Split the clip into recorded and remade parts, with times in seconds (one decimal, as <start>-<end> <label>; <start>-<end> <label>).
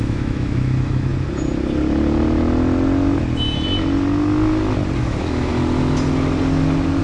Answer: 0.0-1.1 remade; 1.1-5.0 recorded; 5.0-5.5 remade; 5.5-7.0 recorded